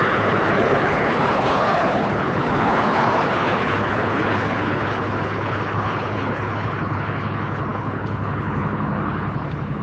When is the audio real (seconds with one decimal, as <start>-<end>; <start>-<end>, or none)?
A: none